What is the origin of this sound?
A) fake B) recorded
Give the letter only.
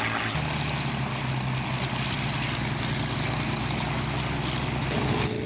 B